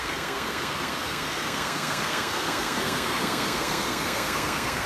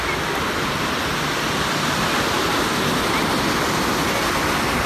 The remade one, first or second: first